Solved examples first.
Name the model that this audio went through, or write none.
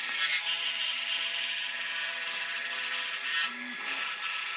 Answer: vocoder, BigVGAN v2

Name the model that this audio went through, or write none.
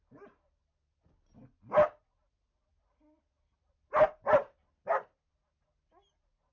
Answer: none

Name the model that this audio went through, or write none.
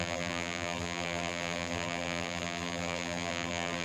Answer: vocoder, BigVGAN v2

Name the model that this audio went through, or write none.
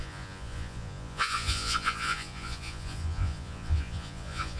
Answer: vocoder, Vocos